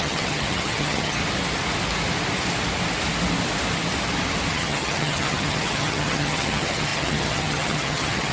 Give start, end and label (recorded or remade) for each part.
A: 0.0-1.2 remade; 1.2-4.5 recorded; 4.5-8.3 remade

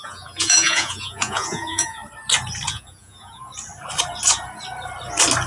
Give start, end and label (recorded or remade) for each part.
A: 0.0-2.0 remade; 2.0-2.7 recorded; 2.7-3.5 remade; 3.5-5.5 recorded

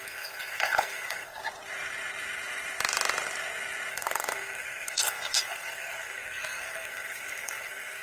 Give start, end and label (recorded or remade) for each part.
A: 0.0-1.4 remade; 1.4-3.9 recorded; 3.9-8.0 remade

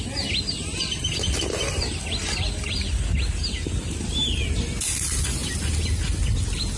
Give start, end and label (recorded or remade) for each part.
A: 0.0-6.8 recorded

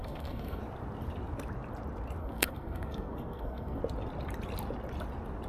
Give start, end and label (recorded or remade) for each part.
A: 0.0-0.6 remade; 0.6-2.2 recorded; 2.2-3.8 remade; 3.8-5.5 recorded